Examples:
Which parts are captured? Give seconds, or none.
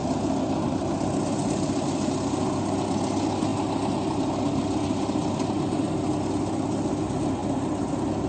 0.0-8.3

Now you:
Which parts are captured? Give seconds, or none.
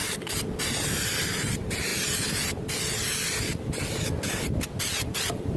0.0-0.6; 1.9-5.6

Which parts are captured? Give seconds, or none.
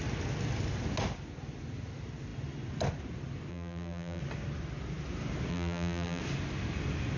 0.0-3.5; 4.2-5.5; 6.2-7.2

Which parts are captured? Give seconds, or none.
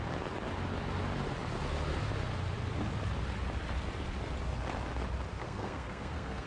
0.0-5.4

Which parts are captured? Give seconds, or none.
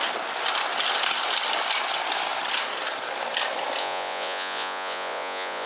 0.0-3.8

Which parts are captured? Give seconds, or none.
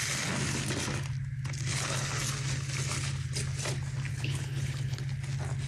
0.0-1.7; 2.2-4.1; 5.0-5.7